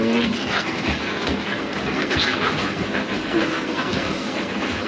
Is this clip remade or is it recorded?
remade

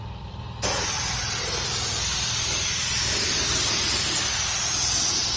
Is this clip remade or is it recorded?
recorded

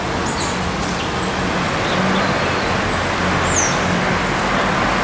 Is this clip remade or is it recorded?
recorded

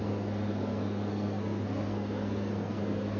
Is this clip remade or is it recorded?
remade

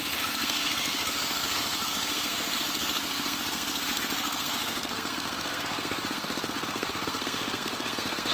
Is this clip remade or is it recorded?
remade